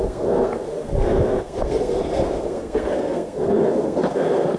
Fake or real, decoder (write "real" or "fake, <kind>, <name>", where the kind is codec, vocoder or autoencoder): fake, codec, SNAC